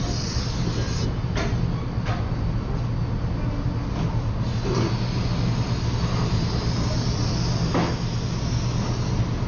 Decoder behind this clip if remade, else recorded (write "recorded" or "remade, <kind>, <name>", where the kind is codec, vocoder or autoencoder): recorded